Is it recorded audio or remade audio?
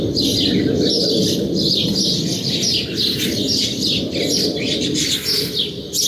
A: recorded